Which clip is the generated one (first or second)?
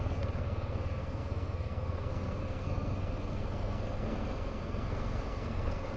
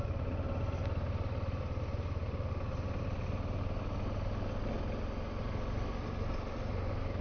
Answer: first